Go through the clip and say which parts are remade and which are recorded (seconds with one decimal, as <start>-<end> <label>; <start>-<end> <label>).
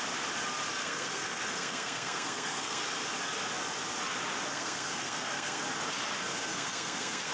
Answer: 0.0-0.8 recorded; 0.8-2.8 remade; 2.8-4.5 recorded; 4.5-5.6 remade; 5.6-6.5 recorded; 6.5-7.3 remade